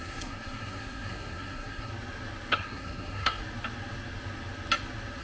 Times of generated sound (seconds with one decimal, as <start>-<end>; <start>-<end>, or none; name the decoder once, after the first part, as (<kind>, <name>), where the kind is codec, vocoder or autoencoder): 0.0-1.9 (codec, SNAC); 2.5-3.4